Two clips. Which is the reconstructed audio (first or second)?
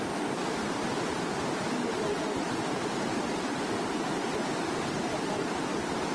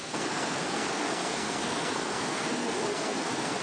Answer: second